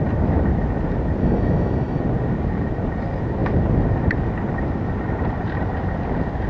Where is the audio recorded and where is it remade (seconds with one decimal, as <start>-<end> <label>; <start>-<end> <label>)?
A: 0.0-1.2 recorded; 1.2-2.0 remade; 2.0-6.5 recorded